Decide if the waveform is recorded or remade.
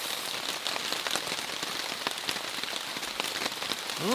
recorded